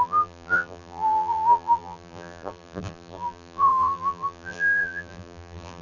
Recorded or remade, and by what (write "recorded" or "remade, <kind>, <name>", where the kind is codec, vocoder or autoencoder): remade, vocoder, BigVGAN v2